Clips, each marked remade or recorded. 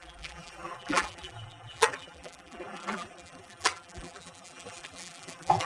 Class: remade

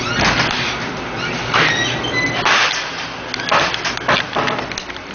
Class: recorded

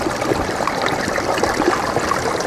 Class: recorded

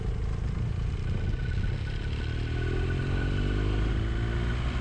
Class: recorded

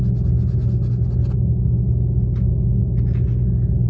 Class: recorded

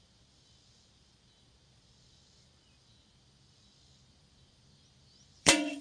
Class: remade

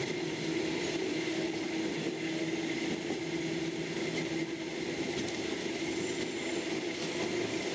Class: recorded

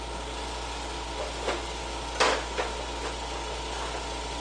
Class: recorded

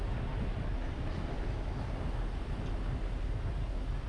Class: recorded